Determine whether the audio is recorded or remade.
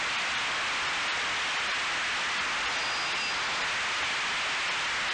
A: recorded